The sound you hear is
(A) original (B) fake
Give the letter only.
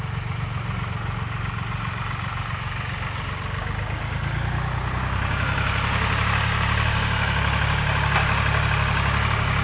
A